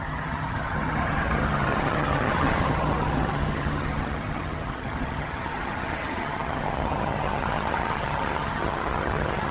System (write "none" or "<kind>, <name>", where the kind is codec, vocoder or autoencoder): vocoder, HiFi-GAN